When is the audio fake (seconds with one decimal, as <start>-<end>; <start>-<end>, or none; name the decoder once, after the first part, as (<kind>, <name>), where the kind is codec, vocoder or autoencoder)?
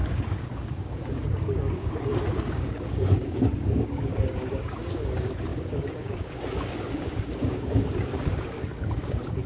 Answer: 0.0-9.5 (codec, DAC)